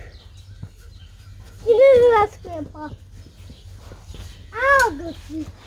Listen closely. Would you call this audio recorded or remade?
recorded